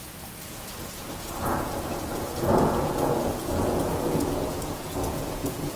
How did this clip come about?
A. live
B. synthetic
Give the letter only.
B